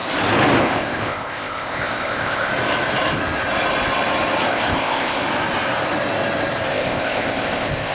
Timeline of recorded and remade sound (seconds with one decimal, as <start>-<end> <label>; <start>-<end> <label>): 0.0-0.6 recorded; 0.6-2.5 remade; 2.5-4.5 recorded; 4.5-5.2 remade; 5.2-6.7 recorded; 6.7-7.9 remade